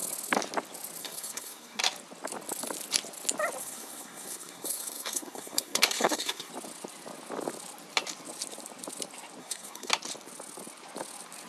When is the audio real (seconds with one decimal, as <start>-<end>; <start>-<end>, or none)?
0.0-1.0; 1.8-3.6; 6.5-9.4; 9.9-11.5